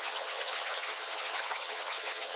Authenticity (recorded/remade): remade